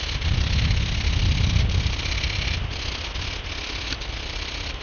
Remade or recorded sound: recorded